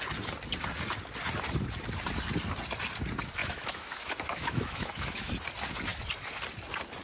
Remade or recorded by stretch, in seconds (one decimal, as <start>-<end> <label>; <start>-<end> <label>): 0.0-3.4 recorded; 3.4-5.3 remade; 5.3-7.0 recorded